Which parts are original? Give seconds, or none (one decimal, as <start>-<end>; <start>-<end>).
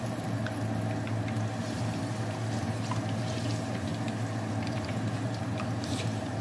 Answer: 0.4-1.6; 3.9-4.5